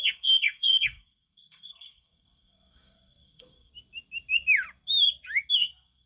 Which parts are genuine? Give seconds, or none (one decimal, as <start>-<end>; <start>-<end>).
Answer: 3.7-5.6